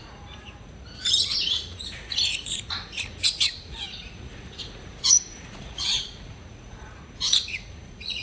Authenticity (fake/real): fake